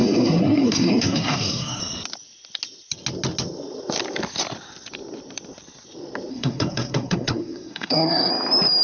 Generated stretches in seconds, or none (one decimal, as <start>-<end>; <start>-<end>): 0.0-1.8; 6.3-8.3